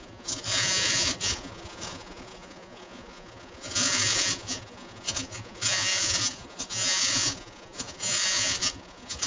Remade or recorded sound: remade